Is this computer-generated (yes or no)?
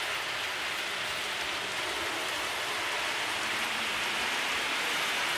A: no